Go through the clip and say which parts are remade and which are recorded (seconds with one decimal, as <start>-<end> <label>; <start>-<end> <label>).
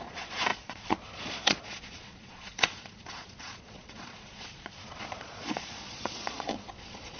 0.0-7.2 remade